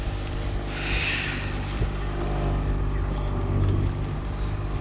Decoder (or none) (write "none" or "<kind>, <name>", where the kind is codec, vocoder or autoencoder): none